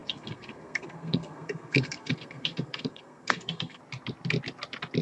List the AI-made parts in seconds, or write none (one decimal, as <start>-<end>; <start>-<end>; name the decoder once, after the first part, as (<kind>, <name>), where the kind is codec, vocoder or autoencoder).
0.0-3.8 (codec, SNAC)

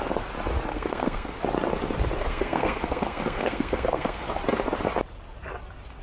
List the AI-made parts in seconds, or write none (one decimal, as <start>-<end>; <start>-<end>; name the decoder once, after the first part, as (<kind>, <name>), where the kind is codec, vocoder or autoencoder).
0.7-1.4 (codec, SNAC); 2.2-4.3

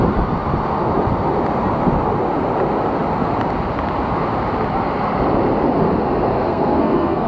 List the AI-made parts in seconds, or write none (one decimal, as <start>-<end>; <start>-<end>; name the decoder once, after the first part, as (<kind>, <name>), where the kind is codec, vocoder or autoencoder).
6.4-7.3 (codec, SNAC)